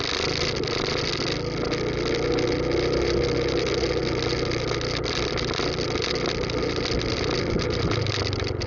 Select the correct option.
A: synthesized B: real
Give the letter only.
B